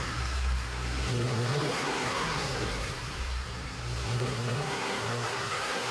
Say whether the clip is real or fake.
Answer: fake